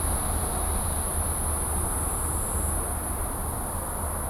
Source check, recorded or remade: recorded